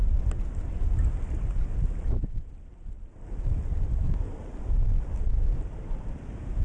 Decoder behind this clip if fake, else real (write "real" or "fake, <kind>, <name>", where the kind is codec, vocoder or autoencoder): real